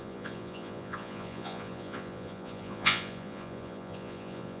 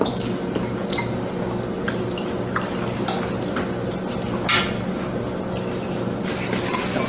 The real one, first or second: second